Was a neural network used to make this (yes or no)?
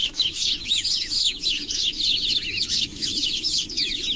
yes